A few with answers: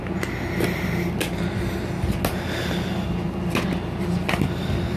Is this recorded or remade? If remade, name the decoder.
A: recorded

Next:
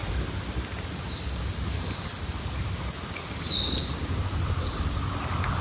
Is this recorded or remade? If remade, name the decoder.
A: recorded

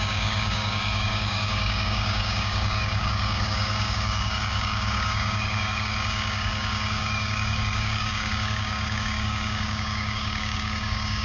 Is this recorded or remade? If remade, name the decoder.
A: remade, codec, DAC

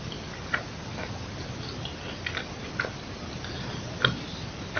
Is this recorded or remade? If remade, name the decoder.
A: recorded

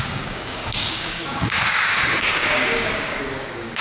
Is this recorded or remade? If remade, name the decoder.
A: remade, codec, DAC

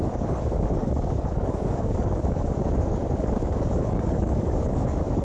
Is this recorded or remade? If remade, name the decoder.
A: remade, codec, DAC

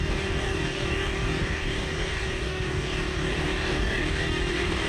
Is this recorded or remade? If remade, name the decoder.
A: remade, codec, DAC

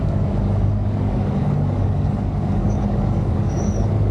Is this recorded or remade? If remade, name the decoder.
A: remade, codec, DAC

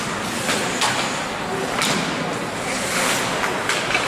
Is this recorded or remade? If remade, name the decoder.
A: recorded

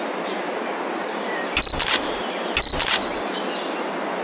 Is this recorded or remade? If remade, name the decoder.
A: recorded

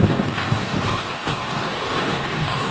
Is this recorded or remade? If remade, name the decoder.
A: remade, codec, DAC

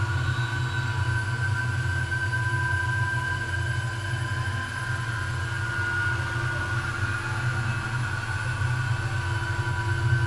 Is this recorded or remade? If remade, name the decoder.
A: recorded